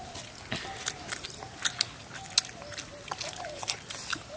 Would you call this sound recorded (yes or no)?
yes